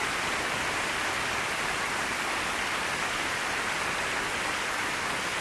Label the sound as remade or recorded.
recorded